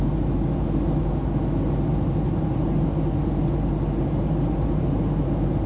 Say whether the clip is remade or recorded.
recorded